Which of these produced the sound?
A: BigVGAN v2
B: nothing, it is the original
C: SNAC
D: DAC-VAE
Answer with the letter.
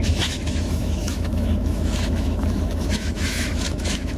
D